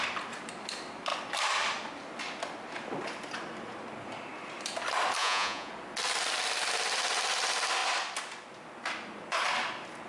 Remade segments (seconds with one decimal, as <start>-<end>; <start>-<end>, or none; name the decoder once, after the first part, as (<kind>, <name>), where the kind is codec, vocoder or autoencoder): 5.2-5.7 (vocoder, Vocos)